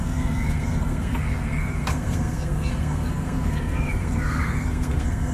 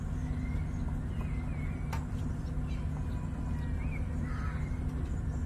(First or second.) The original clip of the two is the second